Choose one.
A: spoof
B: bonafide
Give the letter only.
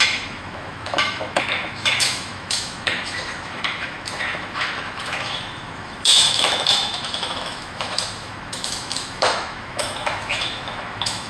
A